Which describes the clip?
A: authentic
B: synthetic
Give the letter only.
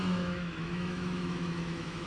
B